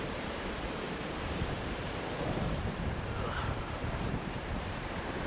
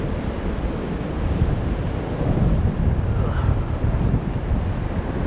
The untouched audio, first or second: second